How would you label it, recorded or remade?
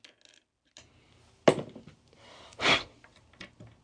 recorded